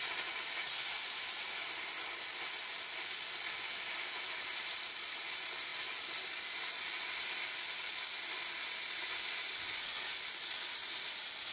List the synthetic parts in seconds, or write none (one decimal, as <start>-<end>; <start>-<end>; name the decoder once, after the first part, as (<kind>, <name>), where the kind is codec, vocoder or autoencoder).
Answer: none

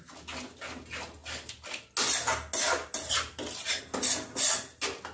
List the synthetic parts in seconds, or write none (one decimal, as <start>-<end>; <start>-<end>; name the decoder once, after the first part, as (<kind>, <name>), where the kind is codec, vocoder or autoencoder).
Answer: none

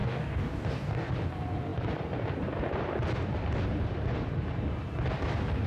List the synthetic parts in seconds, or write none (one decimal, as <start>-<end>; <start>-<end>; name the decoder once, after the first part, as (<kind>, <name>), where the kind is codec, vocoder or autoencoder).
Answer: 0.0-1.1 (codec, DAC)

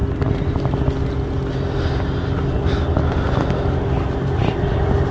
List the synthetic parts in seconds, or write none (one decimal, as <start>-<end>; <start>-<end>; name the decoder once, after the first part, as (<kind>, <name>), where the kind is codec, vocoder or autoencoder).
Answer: none